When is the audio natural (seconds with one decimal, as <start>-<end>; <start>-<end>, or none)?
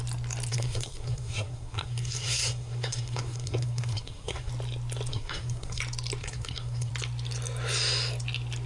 0.0-0.5; 4.5-5.1; 5.8-6.2; 6.9-8.7